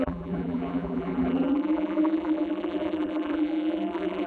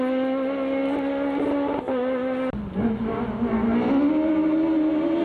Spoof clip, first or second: first